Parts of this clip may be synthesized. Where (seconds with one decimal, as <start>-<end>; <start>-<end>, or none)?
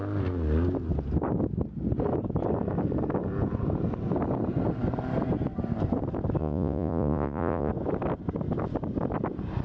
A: 6.4-7.7